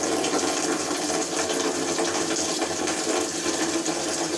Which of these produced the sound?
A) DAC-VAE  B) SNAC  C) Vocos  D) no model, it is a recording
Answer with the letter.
D